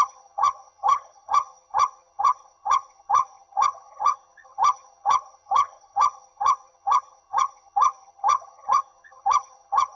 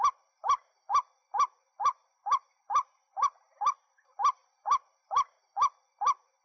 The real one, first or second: second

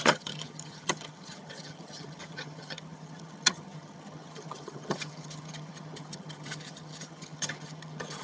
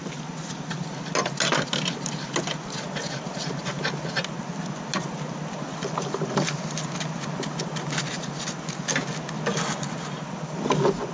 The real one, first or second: second